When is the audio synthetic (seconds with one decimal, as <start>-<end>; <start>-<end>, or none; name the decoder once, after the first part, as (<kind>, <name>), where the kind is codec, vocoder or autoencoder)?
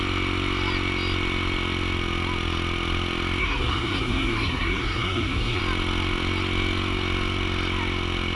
3.4-5.6 (codec, SNAC)